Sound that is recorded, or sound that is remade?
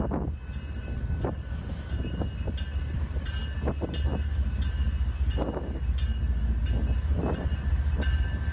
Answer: recorded